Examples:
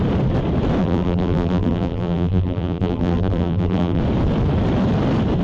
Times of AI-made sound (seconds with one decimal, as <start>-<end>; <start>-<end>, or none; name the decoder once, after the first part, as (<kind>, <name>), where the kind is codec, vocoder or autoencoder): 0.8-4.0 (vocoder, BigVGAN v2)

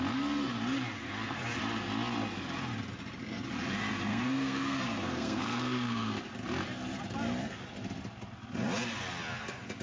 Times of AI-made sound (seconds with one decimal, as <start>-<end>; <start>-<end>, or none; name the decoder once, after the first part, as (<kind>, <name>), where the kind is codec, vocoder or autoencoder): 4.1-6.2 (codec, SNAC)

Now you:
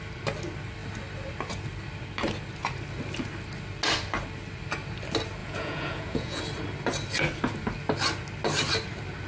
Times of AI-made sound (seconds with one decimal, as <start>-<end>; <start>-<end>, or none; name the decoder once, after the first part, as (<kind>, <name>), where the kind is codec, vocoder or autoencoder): 5.4-6.4 (vocoder, Vocos)

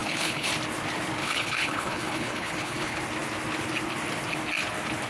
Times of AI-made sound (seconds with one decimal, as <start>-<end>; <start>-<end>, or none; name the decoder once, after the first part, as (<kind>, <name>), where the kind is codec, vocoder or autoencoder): 0.0-0.5 (codec, HILCodec); 1.2-3.0

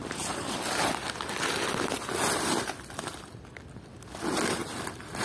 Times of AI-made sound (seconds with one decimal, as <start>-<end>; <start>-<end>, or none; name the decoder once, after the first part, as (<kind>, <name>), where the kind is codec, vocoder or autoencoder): none

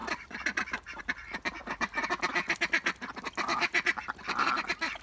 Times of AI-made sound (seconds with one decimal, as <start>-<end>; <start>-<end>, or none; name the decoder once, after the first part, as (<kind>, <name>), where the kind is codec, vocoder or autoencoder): none

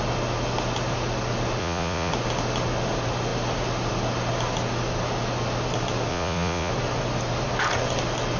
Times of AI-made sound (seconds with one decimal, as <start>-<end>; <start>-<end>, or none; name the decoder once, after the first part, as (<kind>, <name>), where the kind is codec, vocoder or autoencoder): 1.6-2.1 (vocoder, Vocos); 6.1-6.7

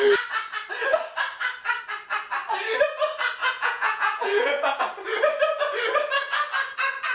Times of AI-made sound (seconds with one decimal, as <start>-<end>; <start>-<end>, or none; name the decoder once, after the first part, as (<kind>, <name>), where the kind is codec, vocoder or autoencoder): 3.4-4.8 (vocoder, Vocos)